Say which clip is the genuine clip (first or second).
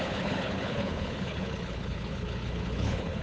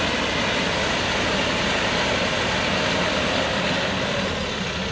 second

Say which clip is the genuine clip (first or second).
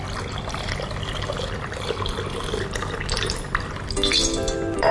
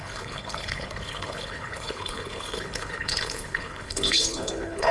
first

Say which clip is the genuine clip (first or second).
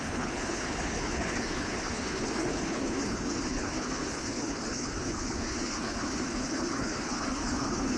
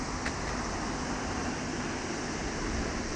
second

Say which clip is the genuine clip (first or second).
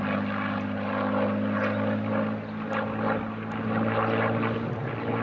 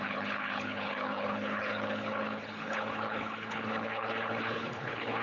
first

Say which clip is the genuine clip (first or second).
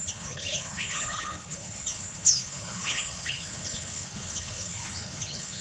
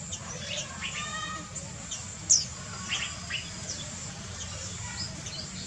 second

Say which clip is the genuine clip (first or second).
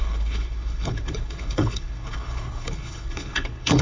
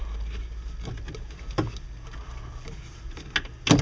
second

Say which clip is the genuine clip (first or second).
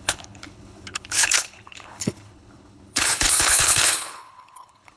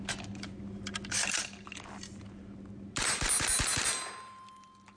second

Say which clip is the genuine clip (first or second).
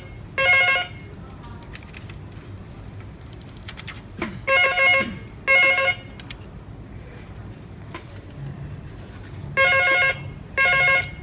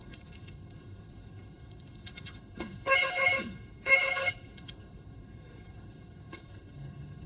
first